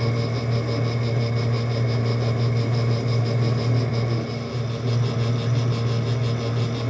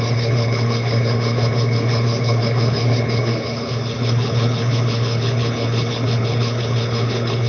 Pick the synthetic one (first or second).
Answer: second